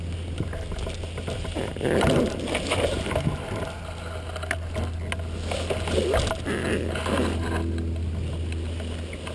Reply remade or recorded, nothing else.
recorded